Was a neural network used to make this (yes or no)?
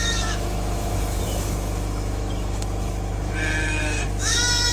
yes